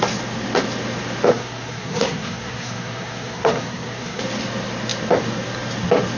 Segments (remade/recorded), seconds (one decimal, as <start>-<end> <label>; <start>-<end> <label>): 0.0-1.3 recorded; 1.3-4.2 remade; 4.2-6.2 recorded